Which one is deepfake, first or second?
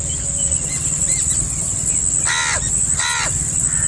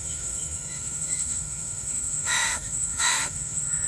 second